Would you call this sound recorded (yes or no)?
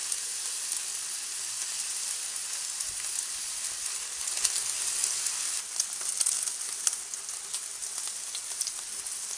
yes